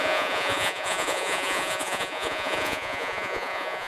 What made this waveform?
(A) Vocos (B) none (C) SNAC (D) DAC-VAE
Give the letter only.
A